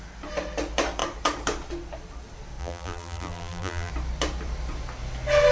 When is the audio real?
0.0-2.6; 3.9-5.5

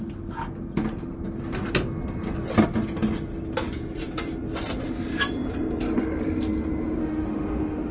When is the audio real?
0.0-7.0

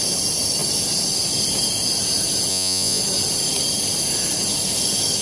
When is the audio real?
0.0-2.5; 3.0-5.2

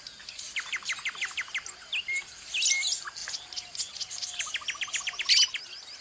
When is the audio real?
0.0-6.0

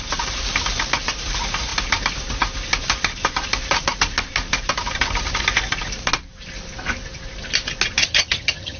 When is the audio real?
0.0-8.0

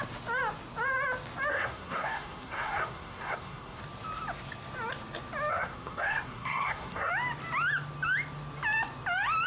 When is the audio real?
0.0-1.5; 3.8-5.5; 7.1-9.5

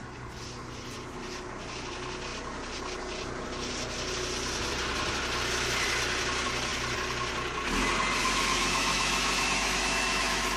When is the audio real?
0.0-8.2

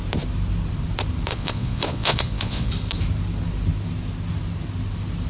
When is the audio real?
0.0-1.3; 2.7-5.3